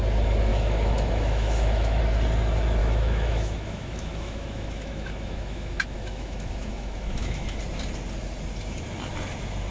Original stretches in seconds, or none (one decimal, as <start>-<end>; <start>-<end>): 0.0-0.5; 2.0-2.8; 7.6-9.7